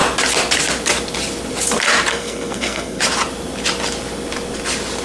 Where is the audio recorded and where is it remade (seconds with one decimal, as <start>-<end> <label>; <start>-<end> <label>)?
0.0-2.1 recorded; 2.1-3.0 remade; 3.0-5.0 recorded